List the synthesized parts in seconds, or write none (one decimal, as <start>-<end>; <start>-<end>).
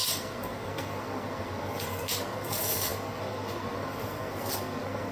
0.0-5.1